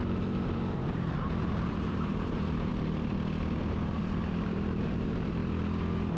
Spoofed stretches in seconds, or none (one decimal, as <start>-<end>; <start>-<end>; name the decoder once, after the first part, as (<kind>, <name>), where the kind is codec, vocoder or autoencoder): 0.0-2.7 (vocoder, BigVGAN v2); 4.0-5.4